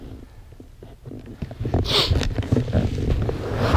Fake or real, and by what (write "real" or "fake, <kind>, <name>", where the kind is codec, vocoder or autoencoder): real